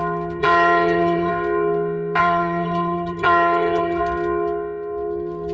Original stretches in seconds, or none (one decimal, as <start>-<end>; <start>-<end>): 0.0-0.4; 1.3-2.2; 4.0-5.5